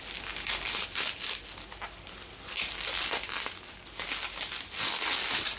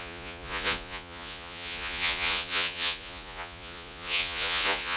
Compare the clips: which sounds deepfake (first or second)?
second